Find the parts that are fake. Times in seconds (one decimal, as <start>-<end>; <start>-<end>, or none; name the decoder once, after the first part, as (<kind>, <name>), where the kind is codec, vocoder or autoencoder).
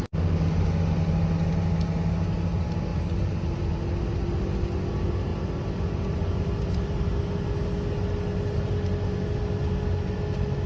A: none